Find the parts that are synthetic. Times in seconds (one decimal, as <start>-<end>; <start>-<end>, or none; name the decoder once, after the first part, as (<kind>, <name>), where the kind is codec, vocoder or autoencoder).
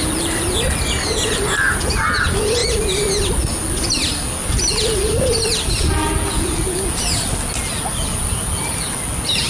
none